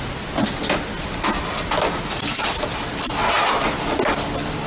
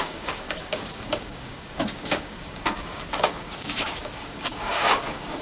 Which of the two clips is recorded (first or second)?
first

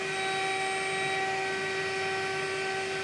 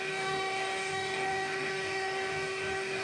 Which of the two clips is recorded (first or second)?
first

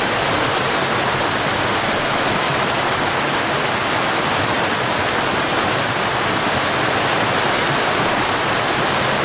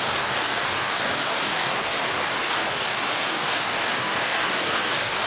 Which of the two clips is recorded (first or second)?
first